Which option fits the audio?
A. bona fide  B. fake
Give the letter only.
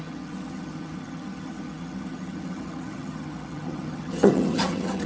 B